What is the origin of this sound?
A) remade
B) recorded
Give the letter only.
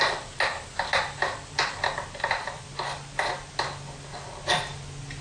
B